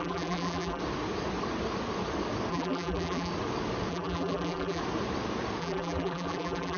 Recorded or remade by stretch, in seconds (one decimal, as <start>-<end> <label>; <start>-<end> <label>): 0.0-0.8 remade; 0.8-2.5 recorded; 2.5-3.3 remade; 3.3-3.9 recorded; 3.9-4.8 remade; 4.8-5.6 recorded; 5.6-6.8 remade